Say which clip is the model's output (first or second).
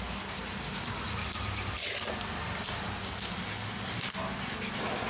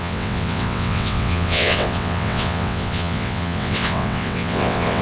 second